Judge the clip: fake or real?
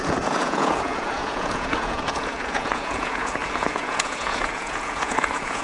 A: fake